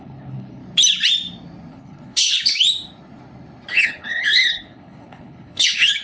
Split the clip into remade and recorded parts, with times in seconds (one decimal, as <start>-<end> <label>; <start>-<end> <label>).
0.0-0.6 remade; 0.6-1.7 recorded; 1.7-2.3 remade; 2.3-3.7 recorded; 3.7-6.0 remade

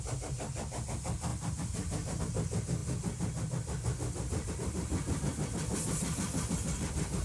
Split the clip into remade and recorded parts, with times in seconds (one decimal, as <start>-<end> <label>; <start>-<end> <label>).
0.0-1.3 recorded; 1.3-2.2 remade; 2.2-7.2 recorded

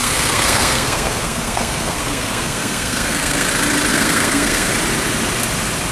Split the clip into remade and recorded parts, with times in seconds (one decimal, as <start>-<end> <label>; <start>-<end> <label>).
0.0-3.5 remade; 3.5-3.9 recorded; 3.9-4.7 remade; 4.7-5.9 recorded

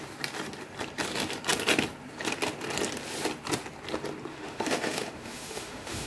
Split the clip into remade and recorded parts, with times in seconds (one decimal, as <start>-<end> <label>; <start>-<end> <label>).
0.0-4.3 recorded; 4.3-6.1 remade

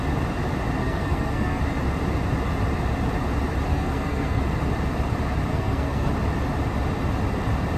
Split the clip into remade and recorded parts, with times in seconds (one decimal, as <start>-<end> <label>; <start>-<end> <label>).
0.0-0.8 recorded; 0.8-1.6 remade; 1.6-3.7 recorded; 3.7-4.4 remade; 4.4-5.5 recorded; 5.5-6.1 remade; 6.1-7.8 recorded

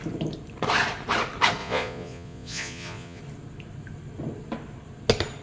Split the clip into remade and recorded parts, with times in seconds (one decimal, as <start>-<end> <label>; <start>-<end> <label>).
0.0-1.6 recorded; 1.6-3.2 remade; 3.2-5.4 recorded